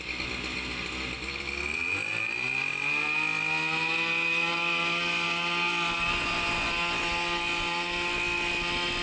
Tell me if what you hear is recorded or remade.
recorded